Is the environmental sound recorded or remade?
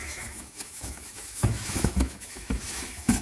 remade